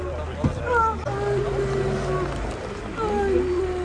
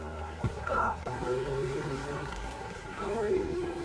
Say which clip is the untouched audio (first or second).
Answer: first